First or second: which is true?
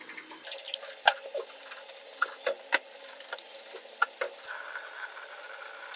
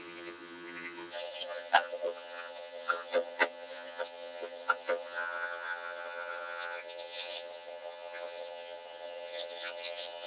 first